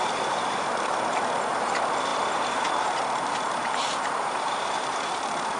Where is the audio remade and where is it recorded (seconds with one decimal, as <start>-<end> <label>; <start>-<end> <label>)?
0.0-5.6 remade